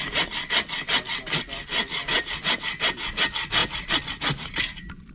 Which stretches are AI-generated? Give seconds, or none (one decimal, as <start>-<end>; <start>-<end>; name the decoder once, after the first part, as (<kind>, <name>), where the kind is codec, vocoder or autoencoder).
3.6-5.1 (vocoder, BigVGAN v2)